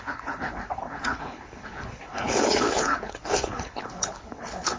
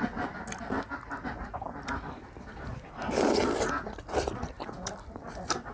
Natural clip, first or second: second